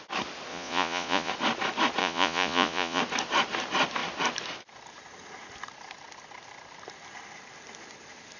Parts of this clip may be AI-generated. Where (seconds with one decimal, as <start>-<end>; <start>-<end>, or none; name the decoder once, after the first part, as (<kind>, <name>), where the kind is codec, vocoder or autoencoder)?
0.5-1.3 (vocoder, Vocos); 2.0-3.0